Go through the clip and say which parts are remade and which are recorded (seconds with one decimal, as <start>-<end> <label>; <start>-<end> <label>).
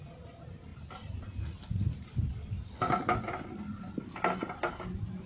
0.0-5.3 recorded